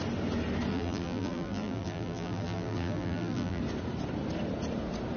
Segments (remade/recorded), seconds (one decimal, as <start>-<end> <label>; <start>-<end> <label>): 0.0-0.7 recorded; 0.7-3.6 remade; 3.6-5.2 recorded

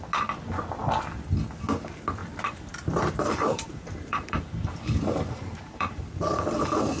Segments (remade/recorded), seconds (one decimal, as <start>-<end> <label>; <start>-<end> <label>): 0.0-2.2 recorded; 2.2-6.1 remade; 6.1-7.0 recorded

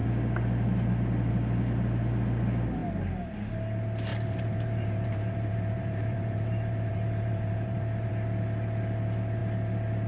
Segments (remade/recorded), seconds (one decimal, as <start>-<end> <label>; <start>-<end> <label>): 0.0-4.1 recorded; 4.1-8.1 remade; 8.1-10.1 recorded

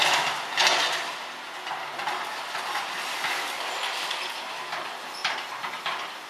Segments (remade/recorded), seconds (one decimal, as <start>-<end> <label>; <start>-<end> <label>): 0.0-5.2 recorded; 5.2-6.3 remade